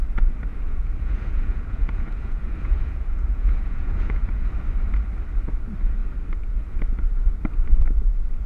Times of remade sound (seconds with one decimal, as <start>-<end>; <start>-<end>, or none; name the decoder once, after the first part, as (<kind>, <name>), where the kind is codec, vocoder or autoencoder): 0.5-4.5 (vocoder, Vocos)